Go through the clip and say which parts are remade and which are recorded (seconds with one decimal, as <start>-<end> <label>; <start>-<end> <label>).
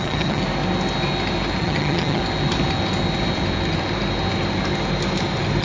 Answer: 0.0-0.4 remade; 0.4-1.6 recorded; 1.6-2.2 remade; 2.2-5.6 recorded